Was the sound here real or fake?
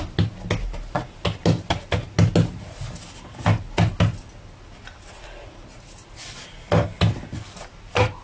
real